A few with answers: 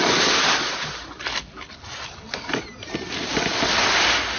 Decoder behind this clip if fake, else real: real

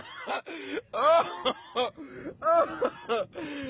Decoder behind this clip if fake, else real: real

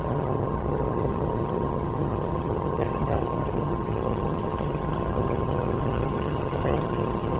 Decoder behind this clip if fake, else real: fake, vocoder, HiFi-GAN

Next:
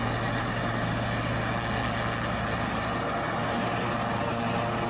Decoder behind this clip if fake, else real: real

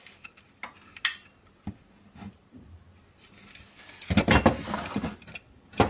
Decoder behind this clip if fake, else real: real